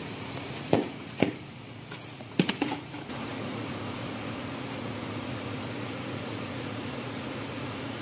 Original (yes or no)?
no